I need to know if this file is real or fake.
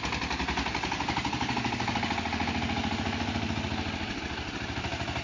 real